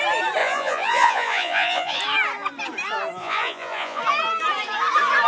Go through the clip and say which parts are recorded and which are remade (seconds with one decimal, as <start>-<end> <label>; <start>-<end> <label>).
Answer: 0.0-0.4 recorded; 0.4-2.0 remade; 2.0-3.2 recorded; 3.2-4.0 remade; 4.0-5.3 recorded